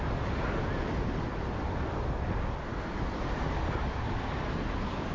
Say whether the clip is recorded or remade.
recorded